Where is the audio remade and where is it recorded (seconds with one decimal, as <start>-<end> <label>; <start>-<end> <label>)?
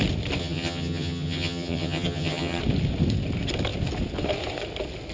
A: 0.0-0.4 recorded; 0.4-2.6 remade; 2.6-5.1 recorded